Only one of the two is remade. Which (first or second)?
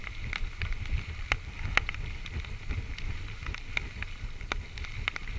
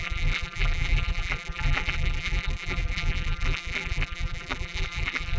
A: second